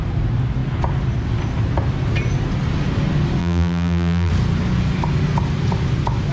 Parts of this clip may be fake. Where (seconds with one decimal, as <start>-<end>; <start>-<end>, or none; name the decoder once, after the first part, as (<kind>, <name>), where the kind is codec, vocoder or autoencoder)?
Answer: 3.4-4.3 (vocoder, BigVGAN v2)